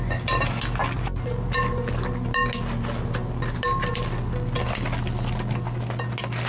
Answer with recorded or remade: recorded